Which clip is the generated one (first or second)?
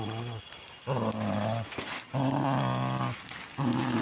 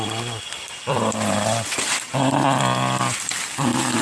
second